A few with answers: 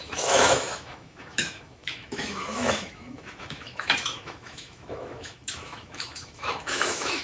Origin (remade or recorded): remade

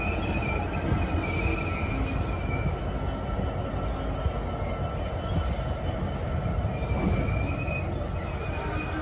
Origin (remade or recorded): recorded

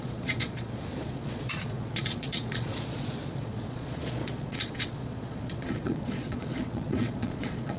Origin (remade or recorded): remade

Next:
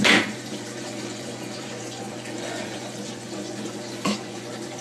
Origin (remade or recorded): remade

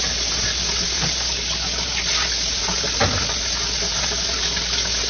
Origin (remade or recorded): recorded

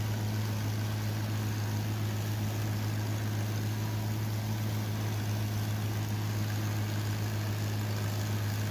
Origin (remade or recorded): recorded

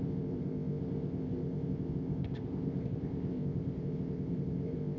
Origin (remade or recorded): remade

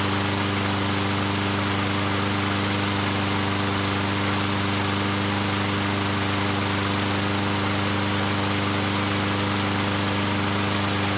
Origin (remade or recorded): recorded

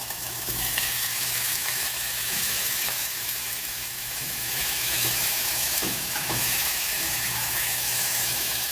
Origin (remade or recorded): remade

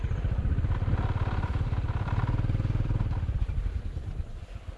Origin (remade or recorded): remade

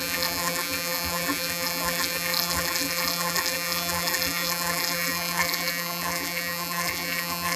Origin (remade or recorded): remade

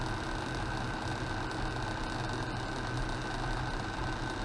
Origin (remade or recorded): recorded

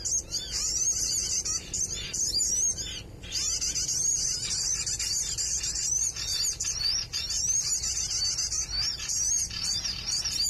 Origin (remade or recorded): recorded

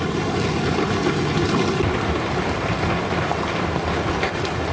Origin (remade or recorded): recorded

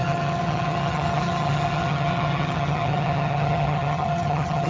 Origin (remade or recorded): remade